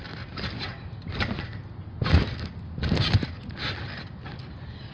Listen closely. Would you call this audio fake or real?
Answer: real